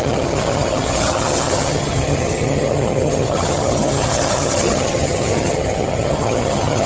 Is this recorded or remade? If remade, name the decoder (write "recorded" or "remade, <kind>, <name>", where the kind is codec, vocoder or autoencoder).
remade, vocoder, HiFi-GAN